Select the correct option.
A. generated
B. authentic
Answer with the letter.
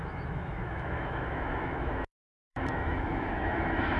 A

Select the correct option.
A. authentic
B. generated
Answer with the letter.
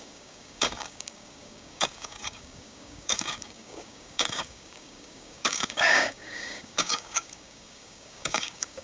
B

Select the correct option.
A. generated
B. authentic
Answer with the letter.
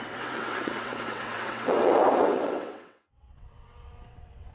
A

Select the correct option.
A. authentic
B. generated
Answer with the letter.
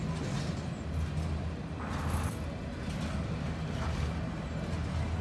A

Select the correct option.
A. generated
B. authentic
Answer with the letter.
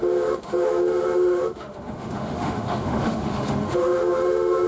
A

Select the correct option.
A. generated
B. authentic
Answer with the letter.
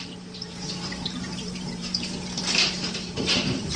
A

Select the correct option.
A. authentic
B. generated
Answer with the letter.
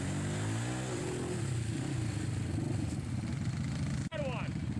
A